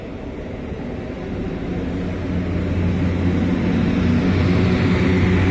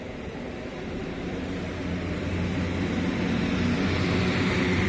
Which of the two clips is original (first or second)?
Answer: first